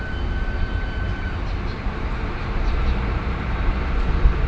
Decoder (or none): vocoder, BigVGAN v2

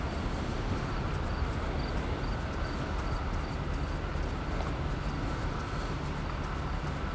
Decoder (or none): none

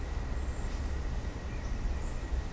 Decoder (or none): none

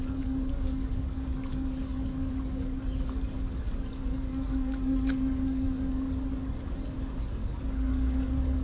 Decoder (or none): codec, DAC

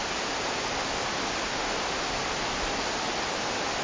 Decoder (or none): none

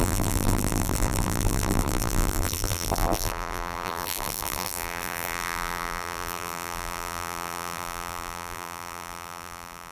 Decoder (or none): vocoder, BigVGAN v2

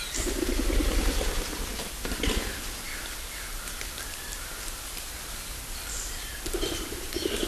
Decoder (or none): vocoder, BigVGAN v2